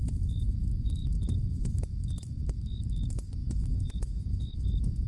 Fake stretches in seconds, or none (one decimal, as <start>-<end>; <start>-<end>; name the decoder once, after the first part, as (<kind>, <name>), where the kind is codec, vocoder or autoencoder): 0.0-5.1 (autoencoder, DAC-VAE)